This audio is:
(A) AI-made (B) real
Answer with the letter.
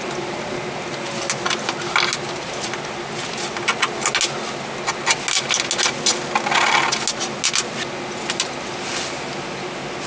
B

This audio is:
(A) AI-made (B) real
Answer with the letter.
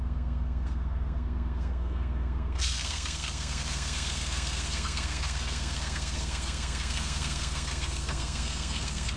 A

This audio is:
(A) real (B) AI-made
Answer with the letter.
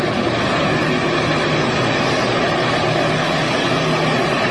A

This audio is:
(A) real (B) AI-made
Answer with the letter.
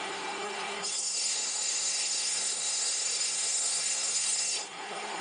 B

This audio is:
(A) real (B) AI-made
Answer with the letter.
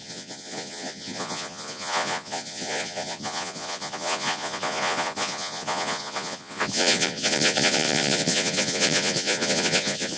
B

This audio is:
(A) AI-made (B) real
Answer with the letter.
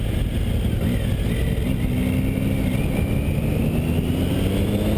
B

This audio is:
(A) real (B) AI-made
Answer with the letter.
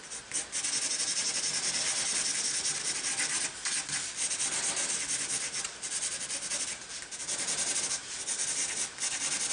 A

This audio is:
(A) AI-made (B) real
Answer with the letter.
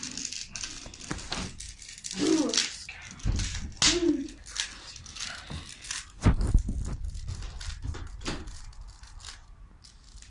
B